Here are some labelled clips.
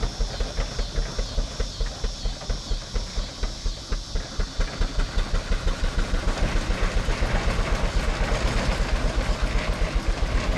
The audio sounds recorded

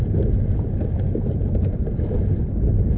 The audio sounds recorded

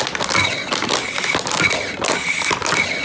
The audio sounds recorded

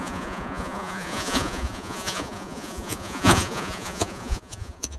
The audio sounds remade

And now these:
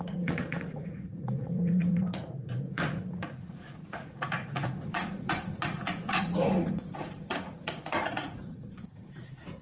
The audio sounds remade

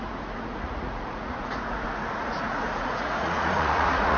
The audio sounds remade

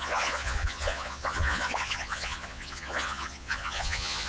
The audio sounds remade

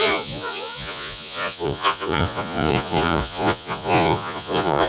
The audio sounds remade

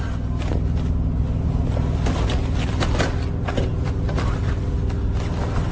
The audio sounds recorded